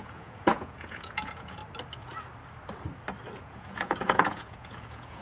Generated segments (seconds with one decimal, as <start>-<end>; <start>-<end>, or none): 0.0-1.6; 3.4-5.2